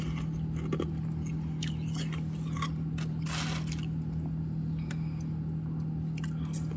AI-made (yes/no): no